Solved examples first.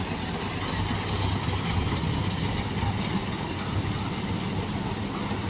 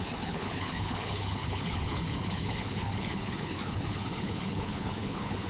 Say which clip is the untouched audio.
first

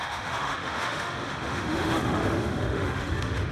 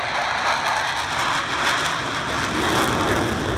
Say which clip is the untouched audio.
second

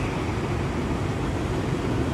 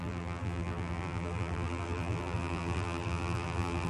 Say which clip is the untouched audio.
first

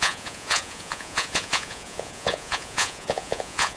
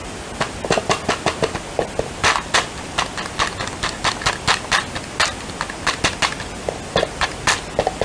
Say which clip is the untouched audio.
second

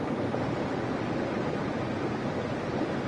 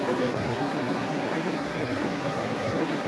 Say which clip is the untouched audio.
first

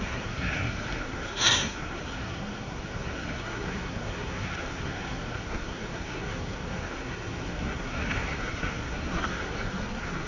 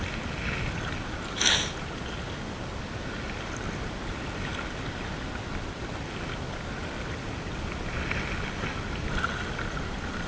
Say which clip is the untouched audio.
second